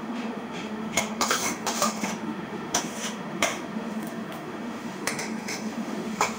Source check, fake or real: fake